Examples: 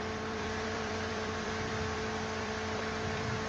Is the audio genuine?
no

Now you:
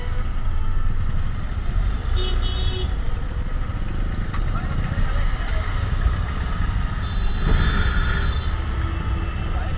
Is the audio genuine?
yes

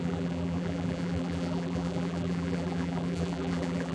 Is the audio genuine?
no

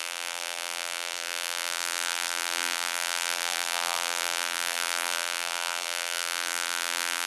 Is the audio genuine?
no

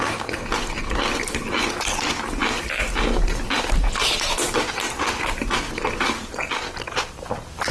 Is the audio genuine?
yes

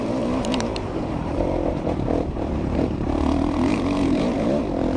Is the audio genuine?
no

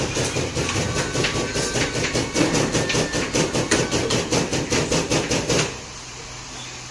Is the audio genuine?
no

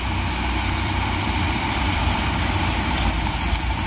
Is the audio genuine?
no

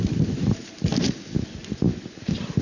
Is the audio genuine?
yes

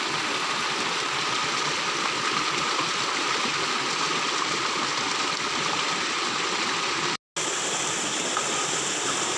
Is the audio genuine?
yes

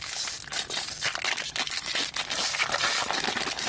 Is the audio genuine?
yes